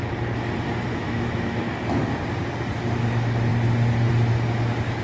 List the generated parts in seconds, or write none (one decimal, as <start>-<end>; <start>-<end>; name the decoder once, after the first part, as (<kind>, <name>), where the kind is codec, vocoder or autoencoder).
0.9-1.6 (autoencoder, DAC-VAE)